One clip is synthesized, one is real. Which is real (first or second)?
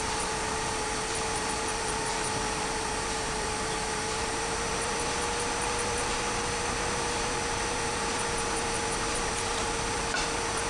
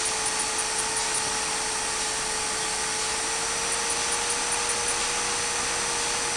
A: second